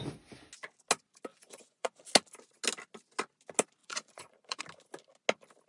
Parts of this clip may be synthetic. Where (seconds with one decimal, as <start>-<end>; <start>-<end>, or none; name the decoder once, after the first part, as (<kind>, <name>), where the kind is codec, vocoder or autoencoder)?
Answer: 1.3-2.0 (vocoder, Vocos); 3.8-4.6